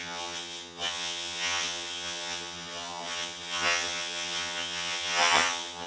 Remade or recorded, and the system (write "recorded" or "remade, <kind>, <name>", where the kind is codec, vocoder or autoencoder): remade, vocoder, HiFi-GAN